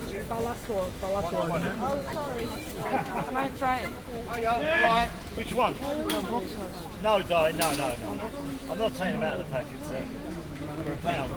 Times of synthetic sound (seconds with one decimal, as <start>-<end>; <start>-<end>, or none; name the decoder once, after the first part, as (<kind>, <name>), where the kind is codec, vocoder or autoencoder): 0.0-11.4 (autoencoder, DAC-VAE)